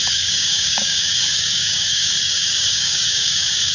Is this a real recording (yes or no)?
no